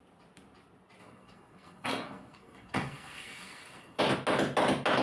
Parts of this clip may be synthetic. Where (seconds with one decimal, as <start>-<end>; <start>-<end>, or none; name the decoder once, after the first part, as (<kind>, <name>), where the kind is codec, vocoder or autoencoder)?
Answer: 1.0-4.0 (codec, SNAC)